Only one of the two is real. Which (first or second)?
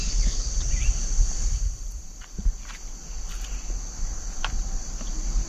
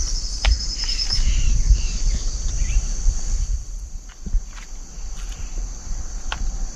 first